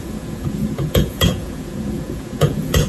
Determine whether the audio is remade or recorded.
remade